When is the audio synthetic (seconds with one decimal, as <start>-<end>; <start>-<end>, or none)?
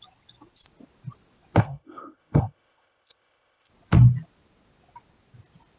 1.6-3.7